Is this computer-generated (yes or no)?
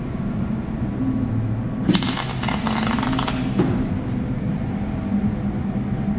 no